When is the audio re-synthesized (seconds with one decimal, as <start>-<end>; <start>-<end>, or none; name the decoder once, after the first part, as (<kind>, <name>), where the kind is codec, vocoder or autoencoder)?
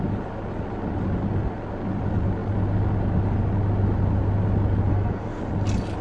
4.9-5.4 (codec, SNAC)